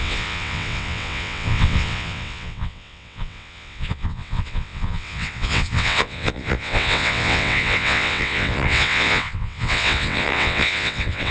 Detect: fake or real fake